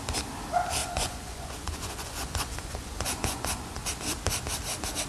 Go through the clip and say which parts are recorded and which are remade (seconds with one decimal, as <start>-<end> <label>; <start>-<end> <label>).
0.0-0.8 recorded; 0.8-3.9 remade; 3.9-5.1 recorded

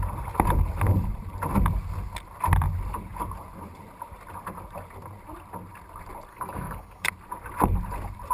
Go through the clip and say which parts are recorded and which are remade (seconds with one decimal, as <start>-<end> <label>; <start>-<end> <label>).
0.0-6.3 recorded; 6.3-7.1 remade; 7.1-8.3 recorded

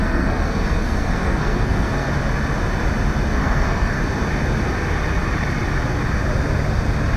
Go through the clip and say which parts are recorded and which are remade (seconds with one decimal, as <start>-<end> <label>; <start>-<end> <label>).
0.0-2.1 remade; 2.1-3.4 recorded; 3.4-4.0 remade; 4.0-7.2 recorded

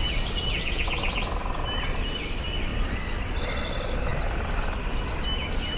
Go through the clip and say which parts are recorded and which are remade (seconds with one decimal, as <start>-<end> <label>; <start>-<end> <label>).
0.0-5.8 recorded